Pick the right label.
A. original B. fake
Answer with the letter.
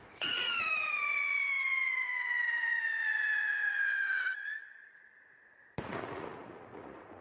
B